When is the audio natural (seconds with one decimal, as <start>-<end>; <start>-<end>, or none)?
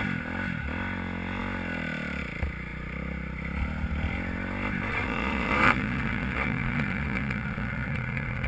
0.0-4.9